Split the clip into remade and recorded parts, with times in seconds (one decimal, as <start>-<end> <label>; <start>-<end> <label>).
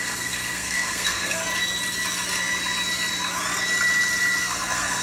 0.0-1.4 remade; 1.4-4.4 recorded; 4.4-5.0 remade